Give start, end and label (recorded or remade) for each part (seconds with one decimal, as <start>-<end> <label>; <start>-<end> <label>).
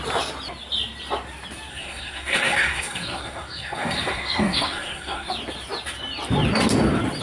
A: 0.0-1.7 recorded; 1.7-5.3 remade; 5.3-7.2 recorded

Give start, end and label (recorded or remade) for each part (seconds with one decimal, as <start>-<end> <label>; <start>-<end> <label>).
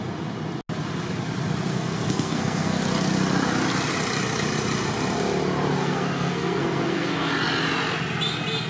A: 0.0-1.7 recorded; 1.7-2.8 remade; 2.8-5.8 recorded; 5.8-7.3 remade; 7.3-8.7 recorded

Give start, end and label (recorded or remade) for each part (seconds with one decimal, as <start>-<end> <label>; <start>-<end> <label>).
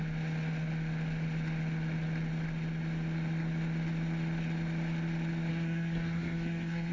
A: 0.0-5.5 recorded; 5.5-6.9 remade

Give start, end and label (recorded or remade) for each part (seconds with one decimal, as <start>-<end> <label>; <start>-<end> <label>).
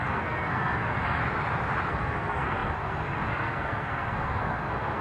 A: 0.0-1.2 remade; 1.2-1.9 recorded; 1.9-5.0 remade